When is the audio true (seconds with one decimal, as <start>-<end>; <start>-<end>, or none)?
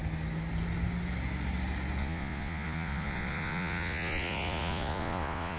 0.0-2.0